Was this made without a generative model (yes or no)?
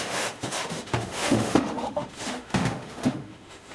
no